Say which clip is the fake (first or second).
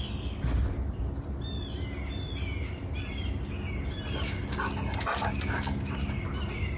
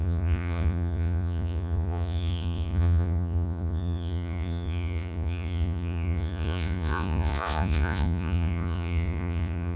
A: second